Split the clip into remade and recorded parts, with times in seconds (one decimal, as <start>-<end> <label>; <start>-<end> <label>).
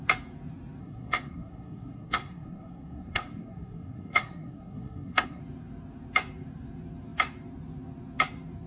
0.0-0.8 recorded; 0.8-5.4 remade; 5.4-8.7 recorded